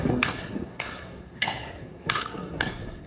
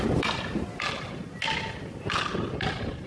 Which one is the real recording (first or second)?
second